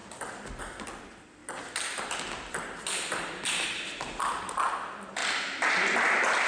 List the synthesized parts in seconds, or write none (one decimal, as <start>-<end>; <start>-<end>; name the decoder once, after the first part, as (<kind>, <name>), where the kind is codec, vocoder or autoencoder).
none